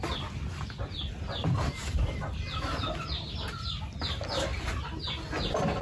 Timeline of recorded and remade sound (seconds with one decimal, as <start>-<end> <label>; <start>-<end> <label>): 0.0-5.8 recorded

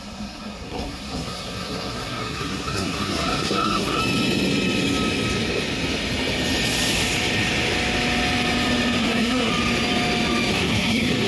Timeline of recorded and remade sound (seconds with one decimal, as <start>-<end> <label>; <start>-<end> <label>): 0.0-4.0 remade; 4.0-9.0 recorded; 9.0-9.5 remade; 9.5-10.5 recorded; 10.5-11.3 remade

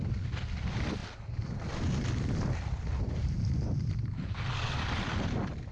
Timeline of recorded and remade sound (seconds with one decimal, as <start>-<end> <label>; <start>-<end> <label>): 0.0-5.7 recorded

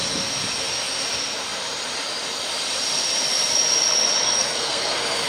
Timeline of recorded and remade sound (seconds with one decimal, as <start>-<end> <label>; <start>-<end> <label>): 0.0-4.4 recorded; 4.4-5.3 remade

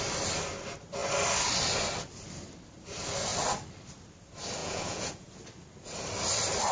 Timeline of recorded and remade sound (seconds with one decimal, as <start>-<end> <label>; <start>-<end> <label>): 0.0-4.6 recorded; 4.6-5.3 remade; 5.3-6.7 recorded

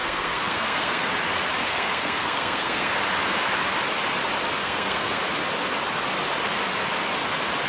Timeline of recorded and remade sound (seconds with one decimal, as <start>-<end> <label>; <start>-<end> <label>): 0.0-1.1 remade; 1.1-1.7 recorded; 1.7-2.9 remade; 2.9-4.6 recorded; 4.6-5.2 remade; 5.2-7.7 recorded